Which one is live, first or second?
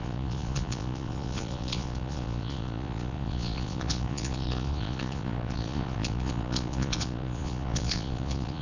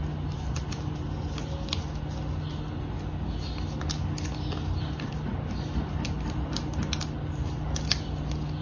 second